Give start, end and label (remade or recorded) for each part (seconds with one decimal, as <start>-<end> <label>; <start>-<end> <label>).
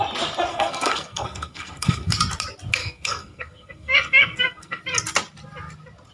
0.0-0.5 recorded; 0.5-2.2 remade; 2.2-2.8 recorded; 2.8-4.8 remade; 4.8-6.1 recorded